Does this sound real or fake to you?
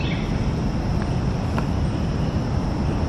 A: real